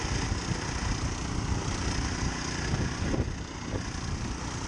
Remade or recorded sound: recorded